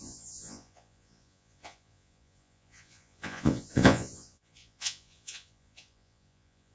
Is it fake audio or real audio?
fake